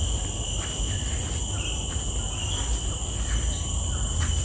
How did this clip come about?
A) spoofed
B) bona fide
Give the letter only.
B